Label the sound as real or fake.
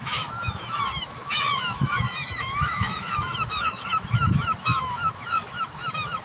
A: fake